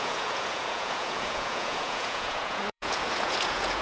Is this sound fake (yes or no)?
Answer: yes